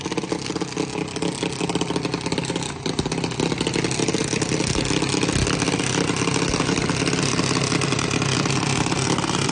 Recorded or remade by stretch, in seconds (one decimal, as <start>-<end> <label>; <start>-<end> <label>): 0.0-9.5 recorded